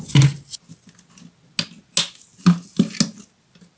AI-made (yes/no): no